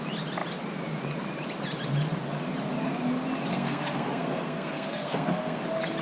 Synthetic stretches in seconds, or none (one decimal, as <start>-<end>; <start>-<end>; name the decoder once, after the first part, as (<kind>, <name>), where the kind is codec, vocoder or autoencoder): 3.5-5.6 (codec, SNAC)